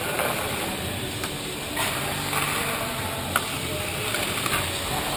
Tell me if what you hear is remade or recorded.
recorded